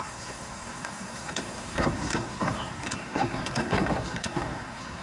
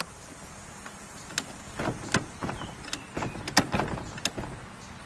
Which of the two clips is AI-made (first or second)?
first